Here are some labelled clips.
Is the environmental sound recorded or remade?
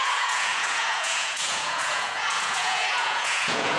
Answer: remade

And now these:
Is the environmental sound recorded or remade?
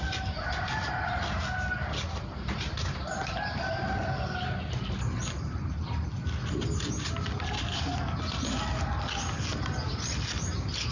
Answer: recorded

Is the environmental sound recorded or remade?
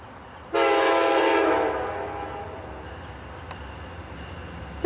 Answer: recorded